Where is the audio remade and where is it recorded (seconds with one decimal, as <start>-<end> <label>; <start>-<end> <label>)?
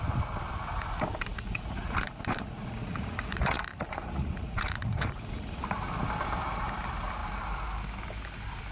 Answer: 0.0-1.3 recorded; 1.3-5.6 remade; 5.6-8.7 recorded